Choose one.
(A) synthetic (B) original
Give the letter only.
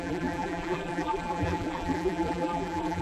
A